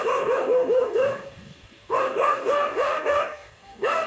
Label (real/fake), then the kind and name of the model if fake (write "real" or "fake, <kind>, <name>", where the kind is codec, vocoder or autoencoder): fake, codec, DAC